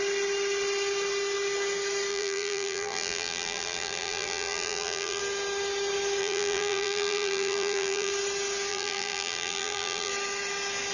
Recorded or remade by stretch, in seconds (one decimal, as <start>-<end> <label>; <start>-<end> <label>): 0.0-2.1 recorded; 2.1-5.2 remade; 5.2-6.2 recorded; 6.2-8.1 remade; 8.1-8.7 recorded; 8.7-10.1 remade; 10.1-10.9 recorded